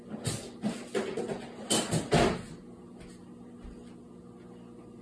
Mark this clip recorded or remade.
recorded